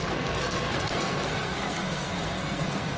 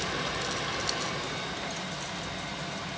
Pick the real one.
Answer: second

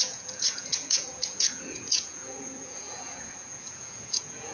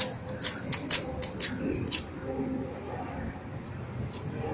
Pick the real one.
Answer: second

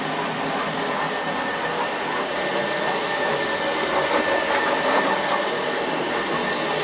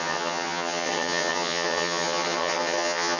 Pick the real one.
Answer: first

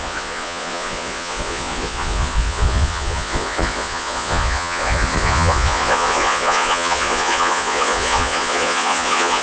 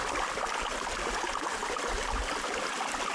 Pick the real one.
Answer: second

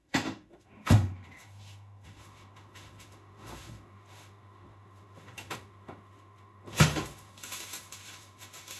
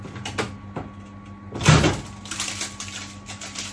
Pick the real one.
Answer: second